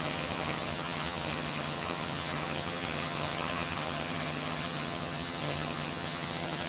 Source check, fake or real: fake